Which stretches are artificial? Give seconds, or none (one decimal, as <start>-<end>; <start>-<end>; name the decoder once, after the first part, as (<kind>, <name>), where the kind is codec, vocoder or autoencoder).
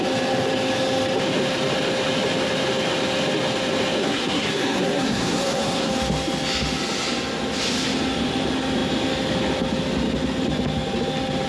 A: 4.0-5.9 (codec, SNAC)